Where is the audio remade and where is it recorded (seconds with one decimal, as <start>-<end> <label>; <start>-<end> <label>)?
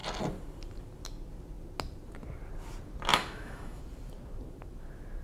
0.0-3.1 recorded; 3.1-3.8 remade; 3.8-5.2 recorded